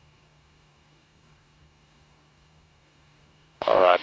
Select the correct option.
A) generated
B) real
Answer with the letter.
A